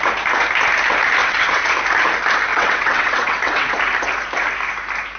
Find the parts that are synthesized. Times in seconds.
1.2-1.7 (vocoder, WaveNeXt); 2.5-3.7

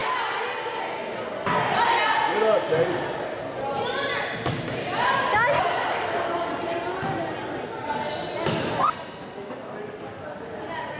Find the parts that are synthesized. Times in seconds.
none

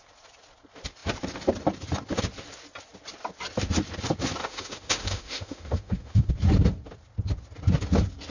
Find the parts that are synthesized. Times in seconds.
4.4-6.3 (autoencoder, DAC-VAE)

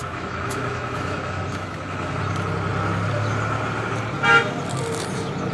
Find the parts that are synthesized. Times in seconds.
0.0-2.2 (autoencoder, DAC-VAE)

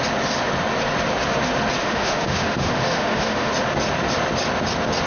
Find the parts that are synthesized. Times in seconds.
1.8-3.5 (autoencoder, DAC-VAE)

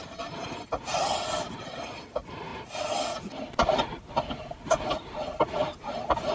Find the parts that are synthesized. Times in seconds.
none